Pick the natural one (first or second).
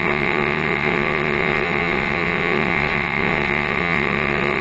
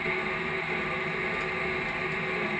second